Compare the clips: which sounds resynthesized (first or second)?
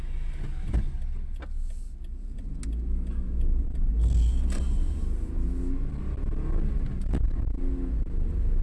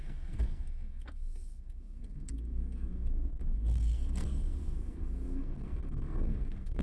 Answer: second